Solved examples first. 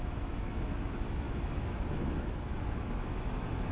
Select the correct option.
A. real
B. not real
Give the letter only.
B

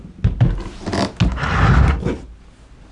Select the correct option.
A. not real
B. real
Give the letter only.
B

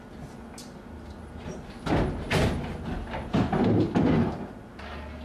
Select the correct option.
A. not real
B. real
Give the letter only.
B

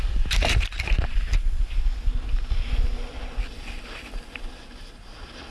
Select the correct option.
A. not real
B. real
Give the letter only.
B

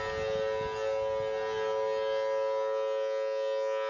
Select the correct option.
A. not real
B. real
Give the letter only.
B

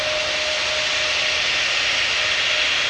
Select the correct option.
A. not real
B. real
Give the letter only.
B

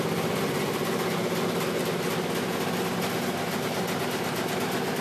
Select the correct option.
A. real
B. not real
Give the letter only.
A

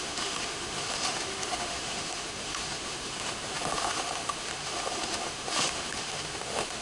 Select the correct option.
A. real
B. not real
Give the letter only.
B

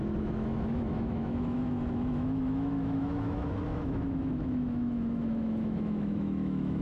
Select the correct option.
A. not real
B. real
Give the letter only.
A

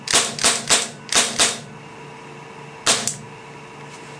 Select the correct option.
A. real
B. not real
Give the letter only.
A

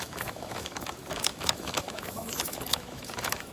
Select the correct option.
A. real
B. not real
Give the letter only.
B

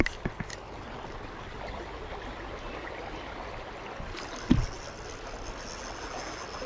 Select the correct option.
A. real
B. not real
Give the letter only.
A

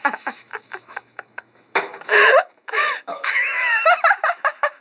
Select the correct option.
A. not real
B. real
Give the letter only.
A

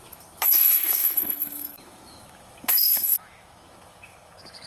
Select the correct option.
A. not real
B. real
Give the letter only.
A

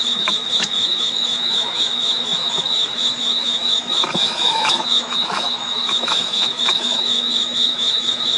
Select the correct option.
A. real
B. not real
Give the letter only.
B